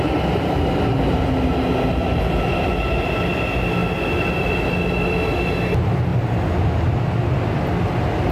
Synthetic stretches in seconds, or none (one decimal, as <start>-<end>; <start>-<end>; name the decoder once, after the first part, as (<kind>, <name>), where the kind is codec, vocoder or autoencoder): none